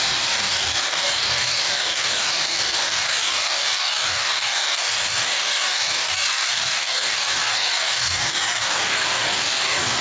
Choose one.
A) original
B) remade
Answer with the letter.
B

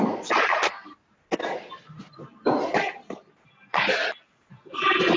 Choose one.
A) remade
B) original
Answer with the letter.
B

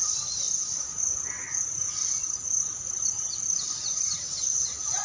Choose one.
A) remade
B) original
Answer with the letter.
B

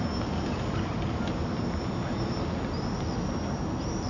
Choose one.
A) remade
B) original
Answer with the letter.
B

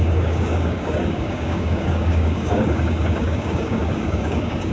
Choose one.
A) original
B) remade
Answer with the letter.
B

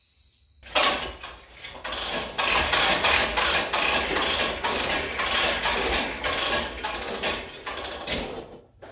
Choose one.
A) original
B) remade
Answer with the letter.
A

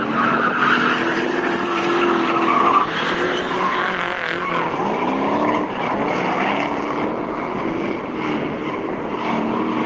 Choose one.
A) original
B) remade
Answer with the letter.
A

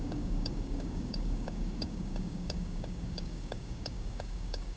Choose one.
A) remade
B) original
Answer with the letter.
A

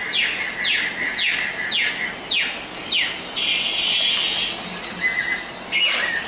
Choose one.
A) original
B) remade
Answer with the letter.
A